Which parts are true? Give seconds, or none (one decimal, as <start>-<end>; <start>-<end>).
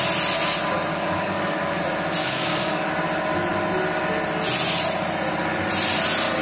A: 0.0-0.9; 1.8-2.2; 2.9-6.4